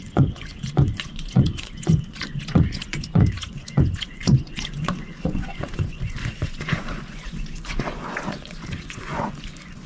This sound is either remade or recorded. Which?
remade